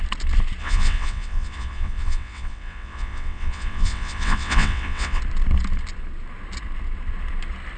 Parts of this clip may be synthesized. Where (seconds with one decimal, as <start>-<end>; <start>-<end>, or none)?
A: 0.6-5.2